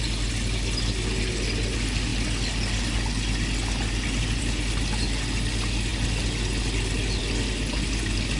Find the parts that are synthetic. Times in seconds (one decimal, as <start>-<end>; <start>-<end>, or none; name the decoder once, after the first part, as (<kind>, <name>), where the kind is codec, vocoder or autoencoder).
none